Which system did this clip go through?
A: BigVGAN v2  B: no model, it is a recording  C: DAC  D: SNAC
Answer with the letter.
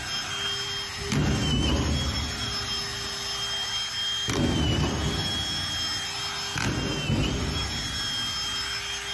B